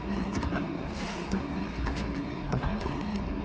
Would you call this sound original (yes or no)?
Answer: no